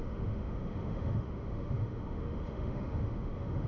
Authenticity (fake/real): fake